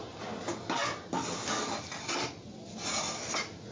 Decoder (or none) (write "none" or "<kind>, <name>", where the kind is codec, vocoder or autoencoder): none